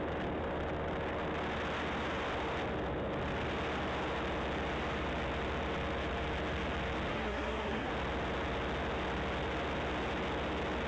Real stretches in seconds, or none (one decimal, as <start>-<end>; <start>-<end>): 0.0-7.1; 7.9-10.9